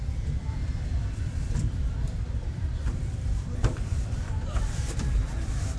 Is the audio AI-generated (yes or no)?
yes